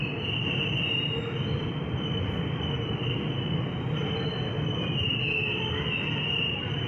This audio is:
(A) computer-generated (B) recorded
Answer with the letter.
B